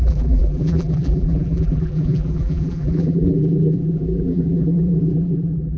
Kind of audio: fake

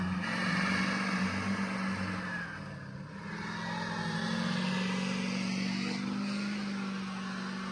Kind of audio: real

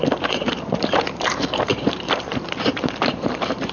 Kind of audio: fake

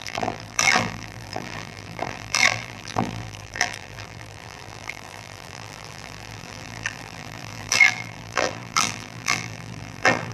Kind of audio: fake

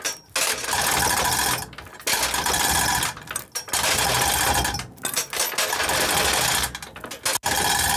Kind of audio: real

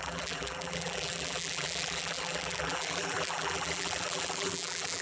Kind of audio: fake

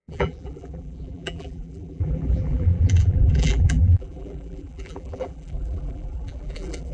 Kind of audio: fake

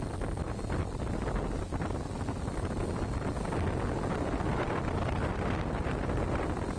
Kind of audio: real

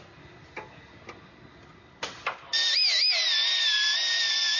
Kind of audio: real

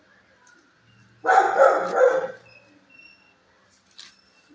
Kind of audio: fake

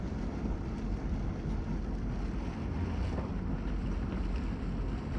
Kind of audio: real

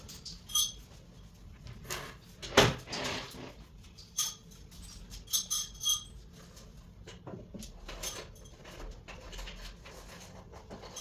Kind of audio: real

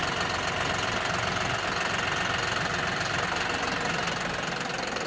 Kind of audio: fake